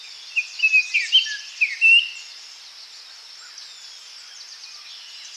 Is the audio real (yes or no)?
yes